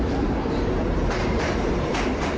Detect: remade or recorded remade